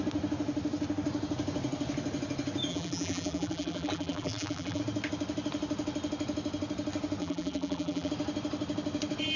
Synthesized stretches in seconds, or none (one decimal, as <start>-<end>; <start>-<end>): 2.7-4.8; 7.2-8.1